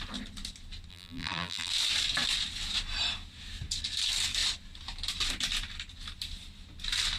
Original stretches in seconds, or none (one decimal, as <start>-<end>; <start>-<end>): 0.0-0.9; 1.7-7.2